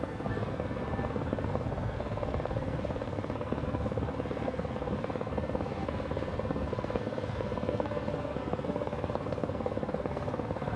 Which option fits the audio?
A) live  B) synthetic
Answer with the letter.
B